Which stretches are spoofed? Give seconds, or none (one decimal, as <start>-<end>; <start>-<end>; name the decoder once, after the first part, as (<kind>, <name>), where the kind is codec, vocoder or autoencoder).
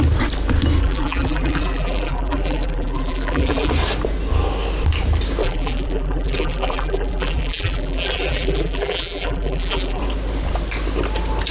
0.8-3.7 (vocoder, BigVGAN v2); 5.4-10.0